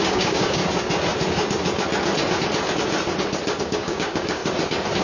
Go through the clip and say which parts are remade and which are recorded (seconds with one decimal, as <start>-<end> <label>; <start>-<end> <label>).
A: 0.0-0.6 remade; 0.6-3.6 recorded; 3.6-4.4 remade; 4.4-5.0 recorded